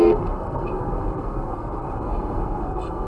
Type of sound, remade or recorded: remade